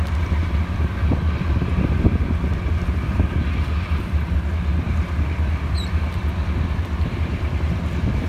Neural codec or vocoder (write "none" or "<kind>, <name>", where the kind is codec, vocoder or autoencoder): vocoder, BigVGAN v2